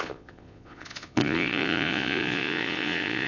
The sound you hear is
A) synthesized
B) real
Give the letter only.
A